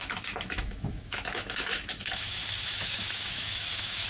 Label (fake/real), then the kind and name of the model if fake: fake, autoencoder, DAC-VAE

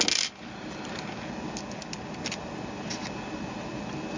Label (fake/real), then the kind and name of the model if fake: real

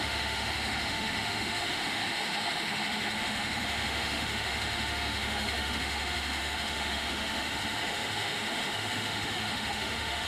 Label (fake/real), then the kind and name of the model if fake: fake, autoencoder, DAC-VAE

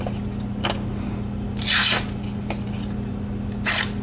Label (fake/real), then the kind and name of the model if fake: real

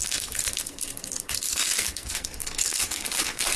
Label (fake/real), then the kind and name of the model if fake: fake, codec, SNAC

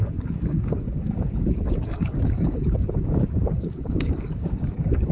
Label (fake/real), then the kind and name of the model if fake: fake, codec, DAC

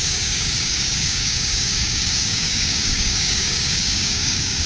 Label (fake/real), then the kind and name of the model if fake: fake, codec, DAC